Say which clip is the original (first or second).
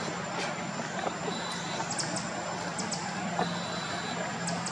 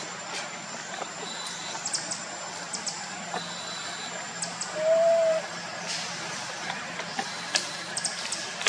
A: first